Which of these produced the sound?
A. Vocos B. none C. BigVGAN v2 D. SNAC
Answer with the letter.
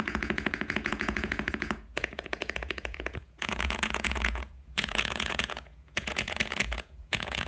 A